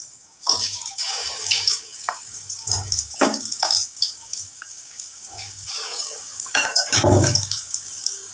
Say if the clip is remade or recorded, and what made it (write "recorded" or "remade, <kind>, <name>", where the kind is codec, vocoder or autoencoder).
remade, codec, DAC